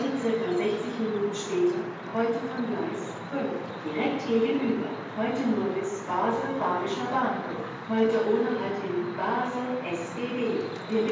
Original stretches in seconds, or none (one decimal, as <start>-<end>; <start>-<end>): 0.0-5.6; 8.7-9.2; 9.8-11.1